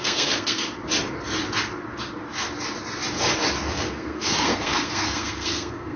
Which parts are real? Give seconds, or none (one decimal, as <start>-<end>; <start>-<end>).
0.6-3.7